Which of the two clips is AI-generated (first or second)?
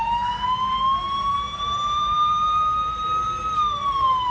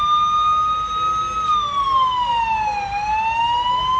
first